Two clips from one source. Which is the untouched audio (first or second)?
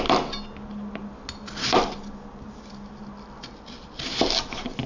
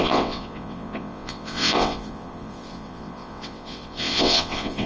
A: first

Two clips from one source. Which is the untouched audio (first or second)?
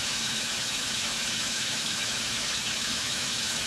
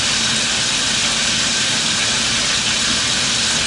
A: second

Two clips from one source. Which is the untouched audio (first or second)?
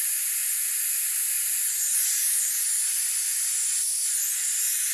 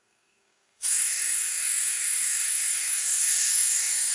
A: first